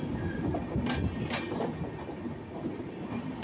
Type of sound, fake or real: real